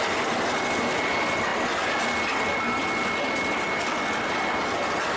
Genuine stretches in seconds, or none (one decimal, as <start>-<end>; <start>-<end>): 0.0-5.2